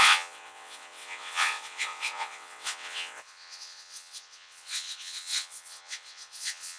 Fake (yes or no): yes